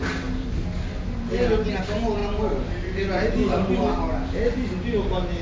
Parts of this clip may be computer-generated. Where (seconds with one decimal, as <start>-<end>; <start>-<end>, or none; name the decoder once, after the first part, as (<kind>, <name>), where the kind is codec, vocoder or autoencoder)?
none